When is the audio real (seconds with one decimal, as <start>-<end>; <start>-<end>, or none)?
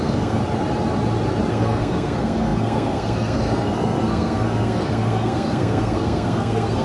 0.4-1.5